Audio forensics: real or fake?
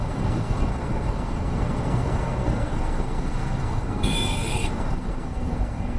fake